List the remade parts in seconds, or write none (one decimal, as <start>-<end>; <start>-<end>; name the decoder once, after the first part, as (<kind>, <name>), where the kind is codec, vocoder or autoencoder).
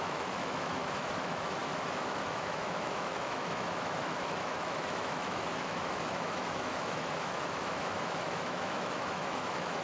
0.0-9.8 (autoencoder, DAC-VAE)